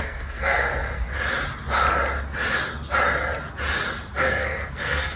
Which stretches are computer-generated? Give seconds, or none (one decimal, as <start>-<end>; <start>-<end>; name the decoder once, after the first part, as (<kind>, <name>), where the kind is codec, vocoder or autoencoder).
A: 0.0-1.1 (codec, SNAC); 4.2-5.2